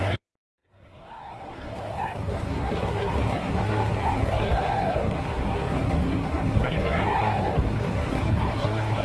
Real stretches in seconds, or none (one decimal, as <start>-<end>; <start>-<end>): none

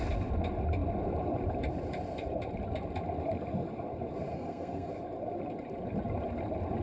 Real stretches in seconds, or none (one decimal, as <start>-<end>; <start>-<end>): 0.0-4.3; 4.9-6.8

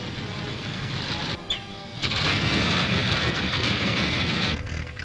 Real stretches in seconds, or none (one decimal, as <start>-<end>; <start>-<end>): 0.0-0.5; 1.0-1.7

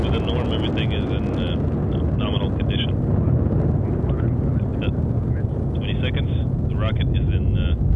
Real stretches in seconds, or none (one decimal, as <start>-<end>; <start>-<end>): 0.0-8.0

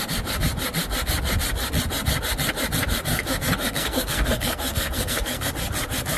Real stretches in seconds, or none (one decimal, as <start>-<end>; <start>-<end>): 0.0-3.1; 5.5-6.2

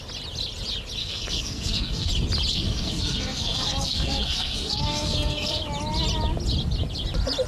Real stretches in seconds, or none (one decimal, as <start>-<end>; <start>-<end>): 0.0-1.0; 2.1-2.5; 5.6-7.5